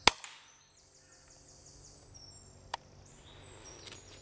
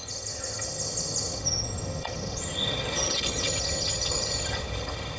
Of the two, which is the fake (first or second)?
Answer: second